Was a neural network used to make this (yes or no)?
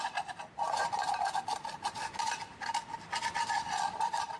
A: yes